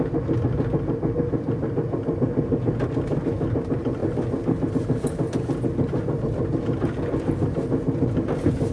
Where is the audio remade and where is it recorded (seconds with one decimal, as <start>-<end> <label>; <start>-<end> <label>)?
0.0-8.7 recorded